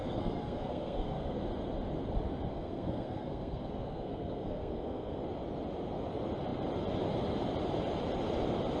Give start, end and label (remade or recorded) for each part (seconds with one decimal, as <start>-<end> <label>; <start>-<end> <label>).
0.0-1.4 remade; 1.4-2.5 recorded; 2.5-5.2 remade; 5.2-8.8 recorded